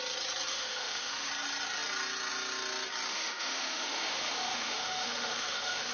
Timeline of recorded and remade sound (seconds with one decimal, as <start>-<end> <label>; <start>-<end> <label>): 0.0-0.5 recorded; 0.5-1.3 remade; 1.3-3.1 recorded; 3.1-5.9 remade